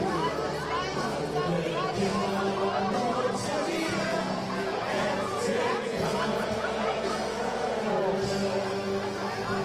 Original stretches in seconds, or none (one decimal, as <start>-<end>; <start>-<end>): 0.0-4.1; 8.0-9.6

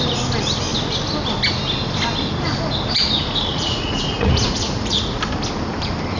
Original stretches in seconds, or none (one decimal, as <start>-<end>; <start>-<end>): 0.0-3.5; 5.2-6.2

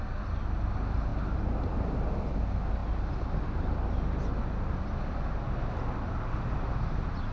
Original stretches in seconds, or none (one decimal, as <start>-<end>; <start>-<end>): 0.0-7.3

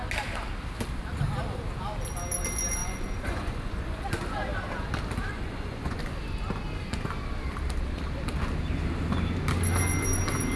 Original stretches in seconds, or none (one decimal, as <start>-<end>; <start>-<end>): 0.0-2.8; 4.0-5.3; 6.0-10.6

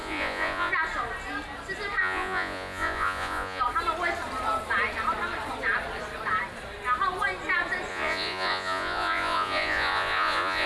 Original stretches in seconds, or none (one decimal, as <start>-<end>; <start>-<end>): 0.7-2.0; 3.6-7.9

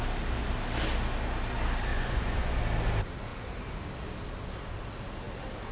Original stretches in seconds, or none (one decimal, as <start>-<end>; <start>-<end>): 0.0-1.9; 2.6-5.7

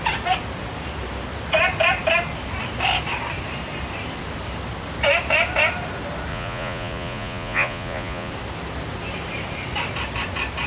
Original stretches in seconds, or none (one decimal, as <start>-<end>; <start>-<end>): 0.0-6.3; 8.3-10.7

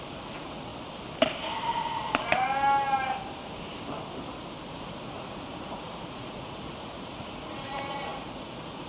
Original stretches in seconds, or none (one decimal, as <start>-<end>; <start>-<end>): 0.7-4.7